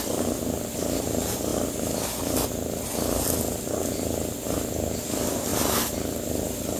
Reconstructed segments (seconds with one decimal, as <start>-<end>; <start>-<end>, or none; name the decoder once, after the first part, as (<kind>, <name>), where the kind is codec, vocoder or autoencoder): 5.5-6.8 (vocoder, BigVGAN v2)